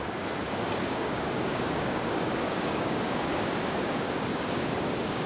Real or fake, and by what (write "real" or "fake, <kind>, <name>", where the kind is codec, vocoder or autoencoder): fake, codec, DAC